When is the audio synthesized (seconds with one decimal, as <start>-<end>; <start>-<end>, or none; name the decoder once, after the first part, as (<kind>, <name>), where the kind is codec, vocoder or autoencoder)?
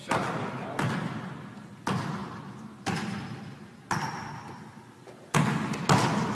none